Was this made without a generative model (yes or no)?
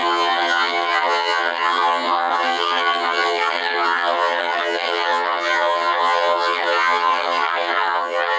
no